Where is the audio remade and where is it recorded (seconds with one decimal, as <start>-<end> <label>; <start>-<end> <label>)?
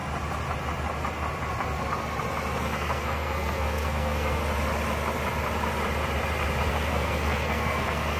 0.0-2.6 recorded; 2.6-4.4 remade; 4.4-6.7 recorded; 6.7-8.2 remade